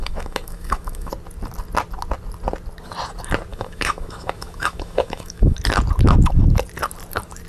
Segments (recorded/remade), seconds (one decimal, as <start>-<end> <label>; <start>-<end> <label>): 0.0-1.1 remade; 1.1-3.5 recorded; 3.5-5.6 remade; 5.6-7.5 recorded